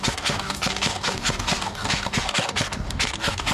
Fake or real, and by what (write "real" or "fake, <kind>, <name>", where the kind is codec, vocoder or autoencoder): fake, codec, DAC